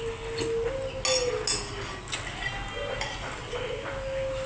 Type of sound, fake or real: real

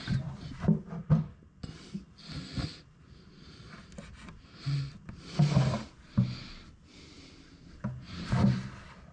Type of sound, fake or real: real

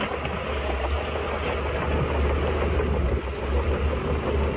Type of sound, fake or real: real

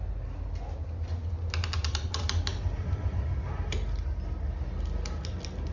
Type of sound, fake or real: real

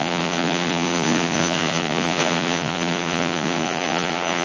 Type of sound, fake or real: fake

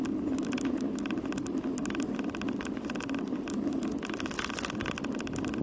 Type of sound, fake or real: real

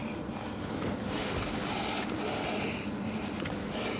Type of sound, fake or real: real